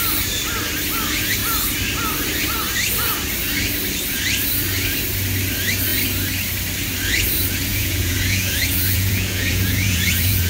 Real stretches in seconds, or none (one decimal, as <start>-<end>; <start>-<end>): 0.0-7.7